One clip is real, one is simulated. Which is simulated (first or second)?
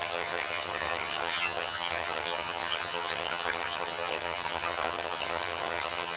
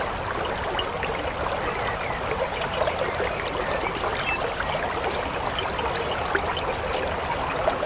first